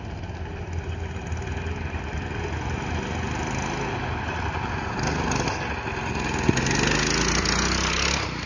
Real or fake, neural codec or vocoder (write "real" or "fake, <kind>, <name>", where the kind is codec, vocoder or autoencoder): real